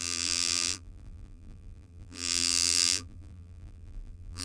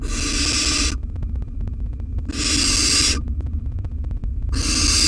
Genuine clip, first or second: second